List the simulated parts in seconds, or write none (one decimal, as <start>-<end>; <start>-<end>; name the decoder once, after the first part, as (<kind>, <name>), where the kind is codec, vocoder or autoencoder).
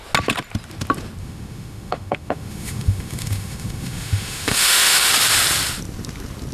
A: 1.2-5.1 (autoencoder, DAC-VAE)